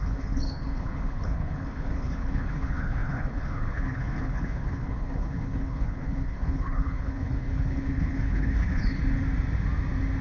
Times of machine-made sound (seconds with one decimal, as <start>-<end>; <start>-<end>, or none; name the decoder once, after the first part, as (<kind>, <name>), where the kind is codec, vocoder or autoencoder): 0.0-9.0 (codec, HILCodec)